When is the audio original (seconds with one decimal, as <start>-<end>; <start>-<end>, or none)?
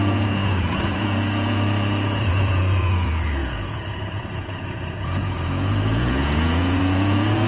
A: none